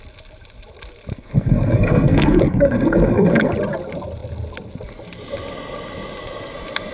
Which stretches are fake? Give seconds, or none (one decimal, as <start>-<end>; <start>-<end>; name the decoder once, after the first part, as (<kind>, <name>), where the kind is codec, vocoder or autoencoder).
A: 1.1-3.5 (codec, SNAC)